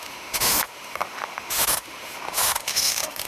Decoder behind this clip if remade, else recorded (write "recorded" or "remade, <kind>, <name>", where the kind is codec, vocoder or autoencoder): remade, autoencoder, DAC-VAE